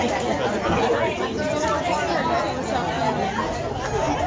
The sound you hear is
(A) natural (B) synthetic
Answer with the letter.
A